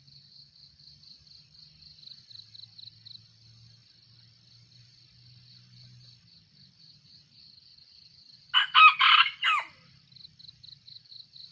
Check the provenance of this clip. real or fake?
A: real